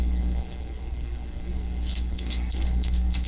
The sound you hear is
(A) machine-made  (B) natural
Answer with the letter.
A